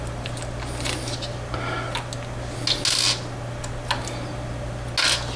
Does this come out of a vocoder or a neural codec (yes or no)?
no